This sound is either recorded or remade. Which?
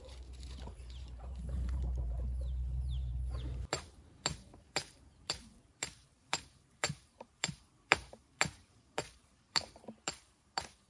remade